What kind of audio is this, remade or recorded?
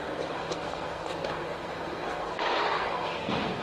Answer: remade